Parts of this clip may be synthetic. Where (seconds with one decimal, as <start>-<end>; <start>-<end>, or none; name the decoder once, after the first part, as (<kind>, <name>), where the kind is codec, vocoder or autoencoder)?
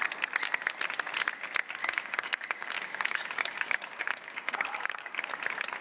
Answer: 1.8-5.3 (codec, DAC)